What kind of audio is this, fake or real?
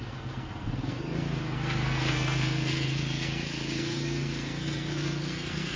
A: fake